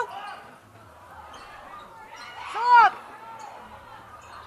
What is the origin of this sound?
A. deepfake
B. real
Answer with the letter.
B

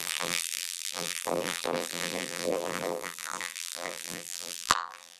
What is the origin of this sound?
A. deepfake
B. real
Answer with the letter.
A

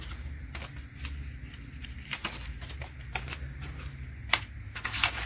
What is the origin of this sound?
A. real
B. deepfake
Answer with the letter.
A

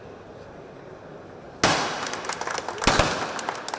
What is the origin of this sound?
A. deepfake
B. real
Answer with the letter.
B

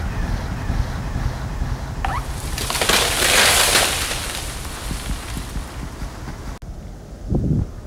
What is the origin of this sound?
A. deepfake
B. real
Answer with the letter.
B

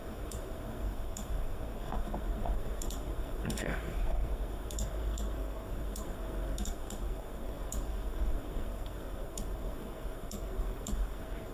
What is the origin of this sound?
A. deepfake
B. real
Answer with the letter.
A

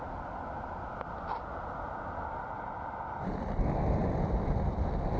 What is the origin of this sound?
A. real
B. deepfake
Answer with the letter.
A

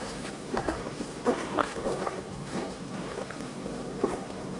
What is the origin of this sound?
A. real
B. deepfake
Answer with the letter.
B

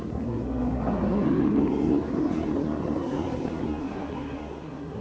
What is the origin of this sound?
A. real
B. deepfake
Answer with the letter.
B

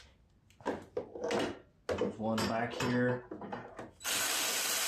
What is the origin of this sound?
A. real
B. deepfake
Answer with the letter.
A